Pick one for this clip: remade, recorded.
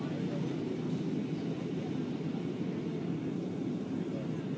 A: recorded